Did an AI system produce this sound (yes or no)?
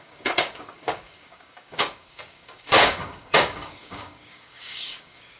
yes